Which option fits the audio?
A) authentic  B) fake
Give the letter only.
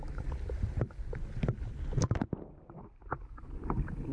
A